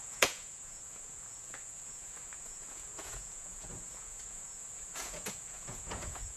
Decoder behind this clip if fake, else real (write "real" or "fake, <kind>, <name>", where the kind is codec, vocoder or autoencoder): fake, vocoder, Vocos